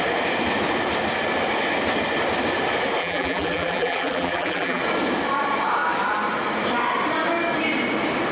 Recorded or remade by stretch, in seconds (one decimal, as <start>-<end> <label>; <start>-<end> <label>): 0.0-3.0 recorded; 3.0-4.8 remade; 4.8-8.3 recorded